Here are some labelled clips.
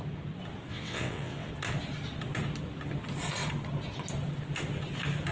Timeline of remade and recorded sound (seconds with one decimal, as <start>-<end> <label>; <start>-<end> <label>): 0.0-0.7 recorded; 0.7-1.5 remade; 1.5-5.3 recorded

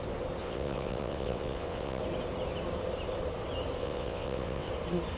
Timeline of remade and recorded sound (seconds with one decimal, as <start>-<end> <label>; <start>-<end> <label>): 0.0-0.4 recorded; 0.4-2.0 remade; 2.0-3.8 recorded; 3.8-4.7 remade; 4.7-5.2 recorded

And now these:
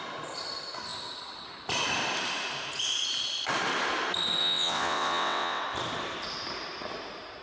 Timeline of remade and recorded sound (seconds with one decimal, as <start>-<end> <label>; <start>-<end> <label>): 0.0-4.4 recorded; 4.4-5.6 remade; 5.6-7.4 recorded